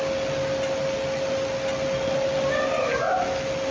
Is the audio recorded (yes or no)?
yes